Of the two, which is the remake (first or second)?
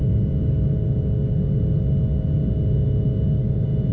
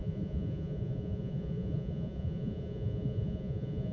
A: second